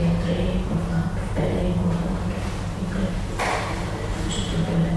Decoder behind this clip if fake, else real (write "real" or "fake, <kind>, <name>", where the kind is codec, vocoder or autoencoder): real